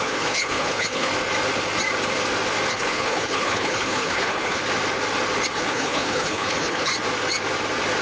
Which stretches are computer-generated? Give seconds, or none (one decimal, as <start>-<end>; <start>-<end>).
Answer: 0.0-1.1; 2.7-4.6; 5.5-6.9